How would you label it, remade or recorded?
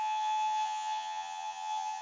remade